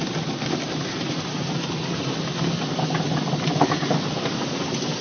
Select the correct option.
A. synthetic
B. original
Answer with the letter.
B